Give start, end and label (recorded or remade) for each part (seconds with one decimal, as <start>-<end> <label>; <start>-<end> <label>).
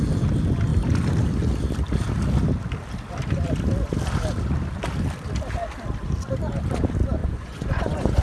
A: 0.0-7.2 recorded; 7.2-8.2 remade